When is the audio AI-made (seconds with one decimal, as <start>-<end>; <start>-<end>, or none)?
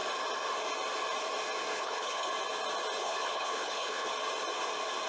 1.7-2.3; 3.0-4.1